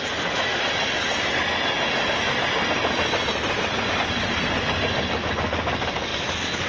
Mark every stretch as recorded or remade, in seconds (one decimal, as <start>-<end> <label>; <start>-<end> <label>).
0.0-6.7 recorded